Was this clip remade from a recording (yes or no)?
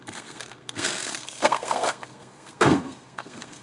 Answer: yes